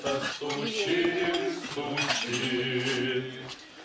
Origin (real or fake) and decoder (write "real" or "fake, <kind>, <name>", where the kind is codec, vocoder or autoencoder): real